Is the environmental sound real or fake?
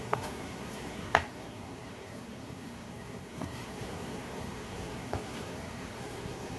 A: fake